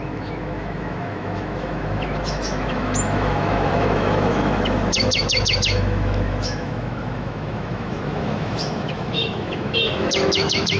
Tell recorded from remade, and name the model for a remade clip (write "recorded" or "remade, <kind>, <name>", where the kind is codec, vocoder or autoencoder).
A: remade, autoencoder, DAC-VAE